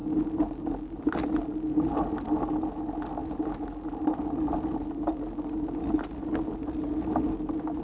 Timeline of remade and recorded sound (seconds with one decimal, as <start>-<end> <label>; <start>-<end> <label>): 0.0-7.8 recorded